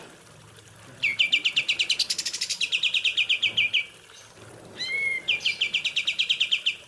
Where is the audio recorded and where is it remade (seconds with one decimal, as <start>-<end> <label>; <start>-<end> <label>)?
0.0-6.9 recorded